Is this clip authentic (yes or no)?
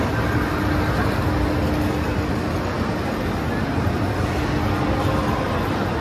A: yes